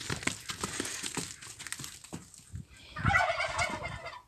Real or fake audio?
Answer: real